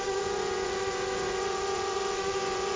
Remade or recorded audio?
remade